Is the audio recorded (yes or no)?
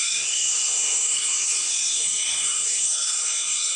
no